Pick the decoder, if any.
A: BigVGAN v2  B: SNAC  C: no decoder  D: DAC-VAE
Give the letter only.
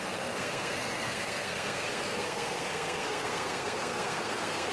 B